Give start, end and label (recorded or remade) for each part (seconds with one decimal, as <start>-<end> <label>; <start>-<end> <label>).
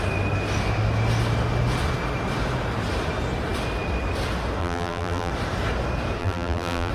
0.0-4.6 recorded; 4.6-5.3 remade; 5.3-6.2 recorded; 6.2-6.9 remade